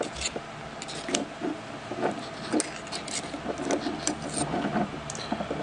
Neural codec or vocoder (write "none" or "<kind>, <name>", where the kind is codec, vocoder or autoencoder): none